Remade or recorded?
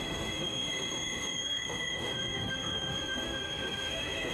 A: remade